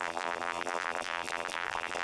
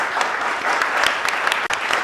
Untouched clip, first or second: second